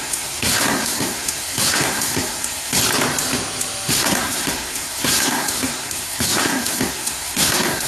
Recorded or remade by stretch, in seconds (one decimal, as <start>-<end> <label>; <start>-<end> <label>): 0.0-2.8 remade; 2.8-3.9 recorded; 3.9-7.9 remade